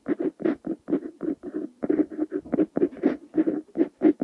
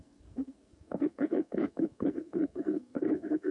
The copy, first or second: second